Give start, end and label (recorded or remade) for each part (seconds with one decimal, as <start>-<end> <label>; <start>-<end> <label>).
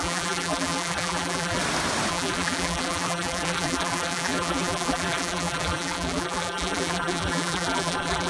0.0-1.6 remade; 1.6-2.1 recorded; 2.1-8.3 remade